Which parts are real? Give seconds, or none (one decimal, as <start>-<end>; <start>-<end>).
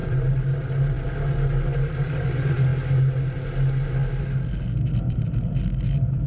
1.1-6.3